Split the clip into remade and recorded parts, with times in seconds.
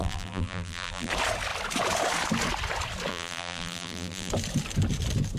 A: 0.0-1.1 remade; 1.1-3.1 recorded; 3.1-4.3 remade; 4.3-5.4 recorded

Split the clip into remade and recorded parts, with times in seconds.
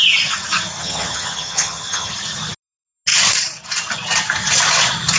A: 0.0-0.8 recorded; 0.8-2.1 remade; 2.1-5.2 recorded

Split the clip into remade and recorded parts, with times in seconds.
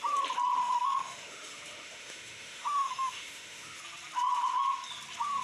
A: 0.0-0.6 recorded; 0.6-3.8 remade; 3.8-5.4 recorded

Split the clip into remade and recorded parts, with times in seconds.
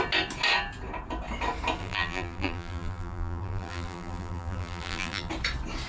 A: 0.0-1.8 recorded; 1.8-5.3 remade; 5.3-5.9 recorded